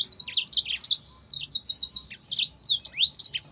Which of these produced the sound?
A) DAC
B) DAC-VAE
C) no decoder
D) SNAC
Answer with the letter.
C